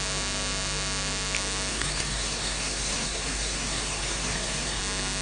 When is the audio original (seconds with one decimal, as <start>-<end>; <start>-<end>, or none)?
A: 0.0-1.7; 4.8-5.2